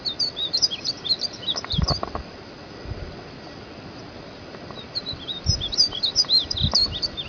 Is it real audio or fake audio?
fake